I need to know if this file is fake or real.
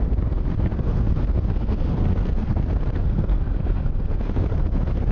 fake